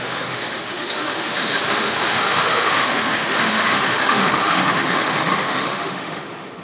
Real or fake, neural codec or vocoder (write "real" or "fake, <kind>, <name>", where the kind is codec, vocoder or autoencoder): fake, autoencoder, DAC-VAE